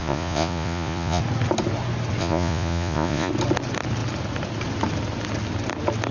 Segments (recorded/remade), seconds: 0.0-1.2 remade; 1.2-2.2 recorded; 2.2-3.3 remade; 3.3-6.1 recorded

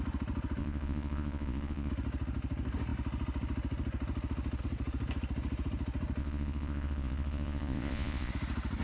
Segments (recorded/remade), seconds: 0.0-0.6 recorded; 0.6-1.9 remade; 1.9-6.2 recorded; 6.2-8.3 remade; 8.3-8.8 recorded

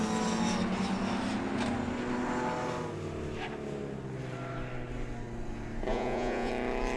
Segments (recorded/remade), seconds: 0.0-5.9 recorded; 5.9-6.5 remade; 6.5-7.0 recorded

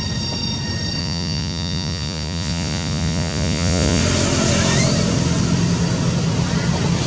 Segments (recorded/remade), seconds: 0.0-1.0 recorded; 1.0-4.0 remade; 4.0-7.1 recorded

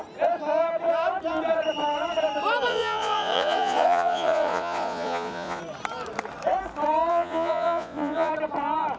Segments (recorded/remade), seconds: 0.0-2.7 recorded; 2.7-5.6 remade; 5.6-7.1 recorded; 7.1-8.3 remade; 8.3-9.0 recorded